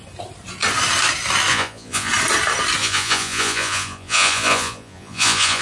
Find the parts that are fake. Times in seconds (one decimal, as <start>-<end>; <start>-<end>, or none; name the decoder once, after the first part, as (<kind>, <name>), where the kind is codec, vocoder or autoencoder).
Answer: 1.5-2.1 (vocoder, Vocos); 2.8-5.6